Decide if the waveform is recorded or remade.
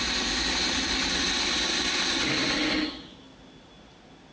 recorded